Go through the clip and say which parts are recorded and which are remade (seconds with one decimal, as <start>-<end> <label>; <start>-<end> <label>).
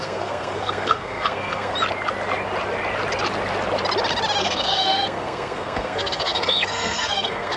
0.0-1.7 remade; 1.7-4.4 recorded; 4.4-7.6 remade